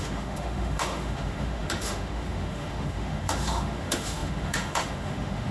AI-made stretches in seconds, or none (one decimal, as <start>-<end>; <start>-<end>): 0.0-5.5